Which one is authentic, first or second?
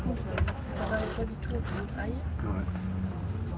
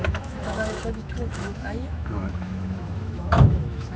first